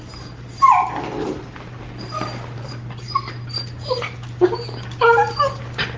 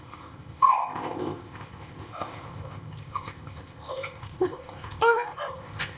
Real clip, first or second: first